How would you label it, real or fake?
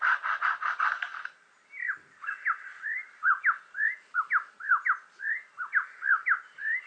real